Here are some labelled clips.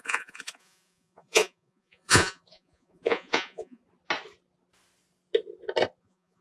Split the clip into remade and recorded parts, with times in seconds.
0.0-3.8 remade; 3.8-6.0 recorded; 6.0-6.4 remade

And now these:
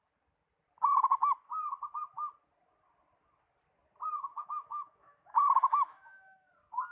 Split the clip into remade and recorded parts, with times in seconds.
0.0-4.3 recorded; 4.3-6.5 remade; 6.5-6.9 recorded

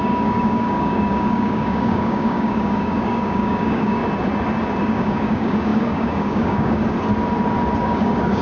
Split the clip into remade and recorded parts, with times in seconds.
0.0-4.0 remade; 4.0-4.8 recorded; 4.8-6.8 remade; 6.8-7.8 recorded; 7.8-8.4 remade